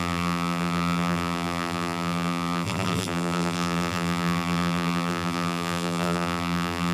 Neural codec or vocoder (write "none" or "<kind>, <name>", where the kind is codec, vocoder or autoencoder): vocoder, BigVGAN v2